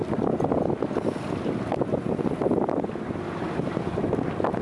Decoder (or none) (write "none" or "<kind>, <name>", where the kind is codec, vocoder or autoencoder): none